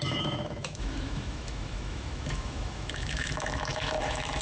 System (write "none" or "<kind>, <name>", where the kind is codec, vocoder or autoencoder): autoencoder, DAC-VAE